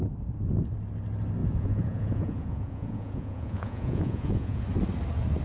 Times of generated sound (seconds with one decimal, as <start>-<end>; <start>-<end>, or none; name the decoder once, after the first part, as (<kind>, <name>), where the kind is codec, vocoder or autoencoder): 1.4-4.6 (vocoder, Vocos)